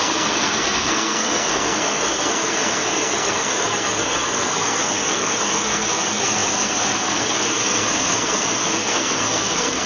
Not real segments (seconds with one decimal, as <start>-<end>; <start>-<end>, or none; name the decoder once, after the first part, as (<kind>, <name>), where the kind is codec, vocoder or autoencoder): 0.0-9.9 (codec, SNAC)